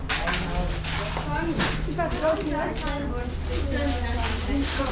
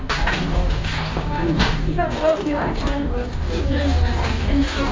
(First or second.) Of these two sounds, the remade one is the second